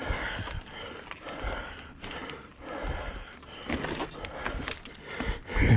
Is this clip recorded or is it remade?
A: recorded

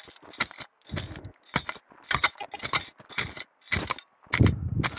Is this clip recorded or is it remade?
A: recorded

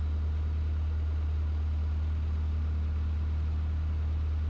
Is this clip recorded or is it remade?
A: recorded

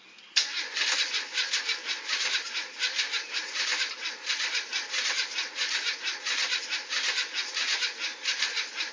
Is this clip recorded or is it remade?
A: recorded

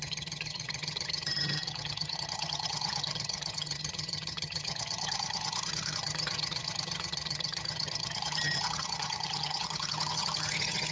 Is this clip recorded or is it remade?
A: remade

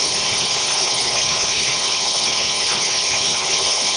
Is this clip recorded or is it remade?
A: remade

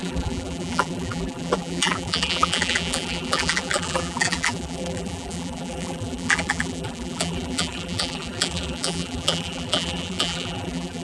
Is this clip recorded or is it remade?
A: remade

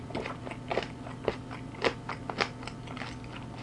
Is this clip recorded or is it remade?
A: recorded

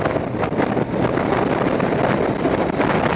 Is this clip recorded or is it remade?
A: recorded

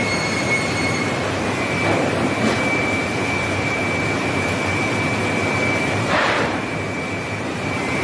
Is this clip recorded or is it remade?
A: remade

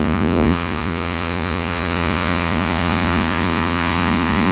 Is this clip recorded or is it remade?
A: remade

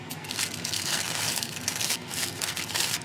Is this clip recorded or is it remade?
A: remade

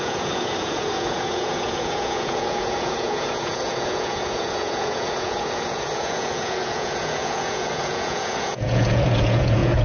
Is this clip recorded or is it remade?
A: remade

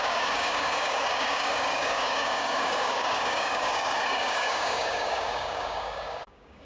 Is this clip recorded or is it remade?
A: remade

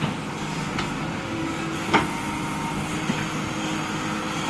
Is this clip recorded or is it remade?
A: recorded